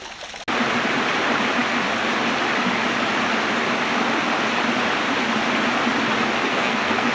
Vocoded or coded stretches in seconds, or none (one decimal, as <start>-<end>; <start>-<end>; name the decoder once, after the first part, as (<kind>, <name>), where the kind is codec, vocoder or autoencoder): 6.5-7.1 (codec, SNAC)